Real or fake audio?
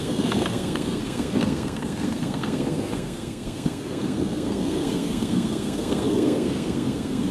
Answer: fake